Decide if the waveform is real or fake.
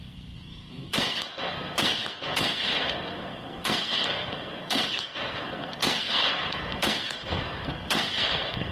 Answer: fake